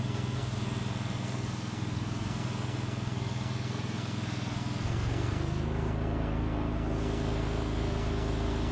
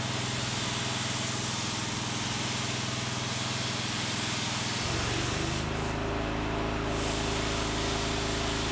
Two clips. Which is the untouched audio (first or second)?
second